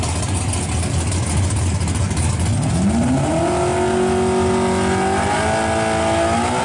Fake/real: real